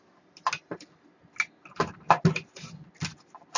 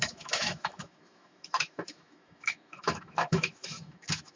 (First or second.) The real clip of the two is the first